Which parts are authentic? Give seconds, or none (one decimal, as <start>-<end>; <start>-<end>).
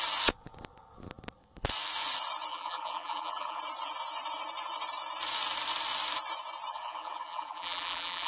0.0-2.5; 3.6-6.7